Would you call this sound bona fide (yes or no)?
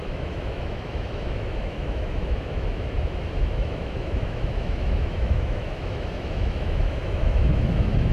no